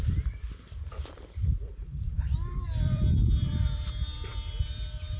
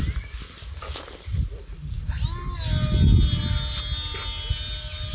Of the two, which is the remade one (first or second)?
first